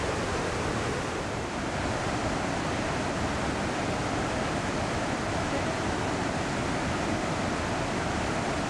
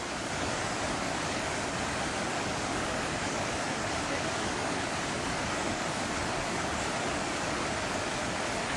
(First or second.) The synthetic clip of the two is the second